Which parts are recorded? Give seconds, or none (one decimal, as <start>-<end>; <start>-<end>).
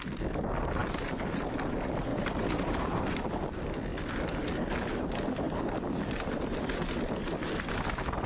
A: 0.0-0.8; 1.4-2.1; 3.2-8.3